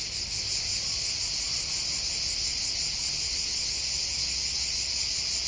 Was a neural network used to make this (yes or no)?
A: no